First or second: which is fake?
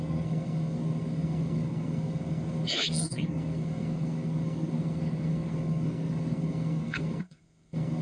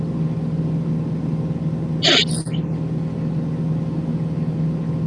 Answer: first